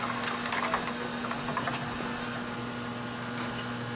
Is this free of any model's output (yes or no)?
yes